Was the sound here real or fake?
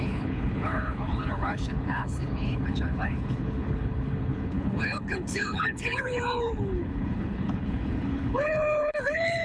fake